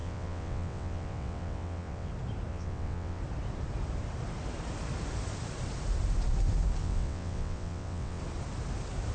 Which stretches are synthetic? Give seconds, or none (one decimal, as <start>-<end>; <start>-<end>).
0.0-2.1; 2.5-3.2; 6.8-8.2